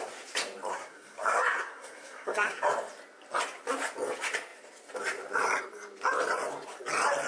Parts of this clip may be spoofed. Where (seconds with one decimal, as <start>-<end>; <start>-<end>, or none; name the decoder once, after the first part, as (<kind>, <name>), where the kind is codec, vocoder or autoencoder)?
0.7-2.6 (codec, SNAC)